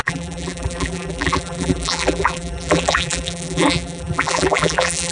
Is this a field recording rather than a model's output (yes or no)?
no